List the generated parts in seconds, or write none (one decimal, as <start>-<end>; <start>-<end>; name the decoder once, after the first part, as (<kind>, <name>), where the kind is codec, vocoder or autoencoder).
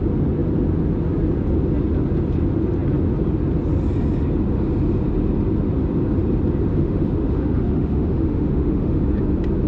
6.7-9.0 (autoencoder, DAC-VAE)